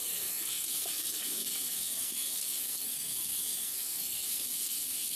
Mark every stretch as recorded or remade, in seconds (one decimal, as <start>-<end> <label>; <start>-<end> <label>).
0.0-5.2 remade

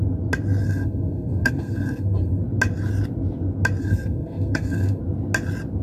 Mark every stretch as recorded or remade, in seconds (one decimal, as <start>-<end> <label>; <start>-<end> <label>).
0.0-0.6 recorded; 0.6-2.4 remade; 2.4-3.8 recorded; 3.8-5.0 remade; 5.0-5.8 recorded

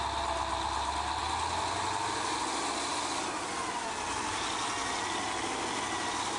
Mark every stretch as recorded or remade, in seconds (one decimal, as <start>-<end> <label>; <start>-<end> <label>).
0.0-6.4 recorded